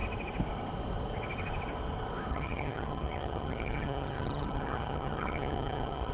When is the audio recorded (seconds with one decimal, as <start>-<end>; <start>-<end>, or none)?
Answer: 0.0-2.3